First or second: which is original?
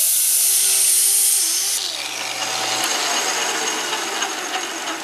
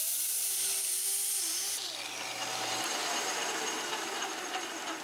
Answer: first